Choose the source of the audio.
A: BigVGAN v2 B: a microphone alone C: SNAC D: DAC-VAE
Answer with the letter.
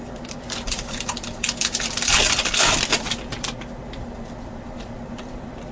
A